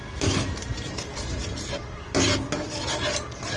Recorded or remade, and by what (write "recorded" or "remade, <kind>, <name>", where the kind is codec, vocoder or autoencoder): recorded